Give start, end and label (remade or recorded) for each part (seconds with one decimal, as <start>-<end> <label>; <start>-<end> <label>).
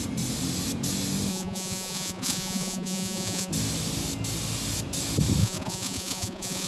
0.0-1.3 recorded; 1.3-3.5 remade; 3.5-5.4 recorded; 5.4-6.7 remade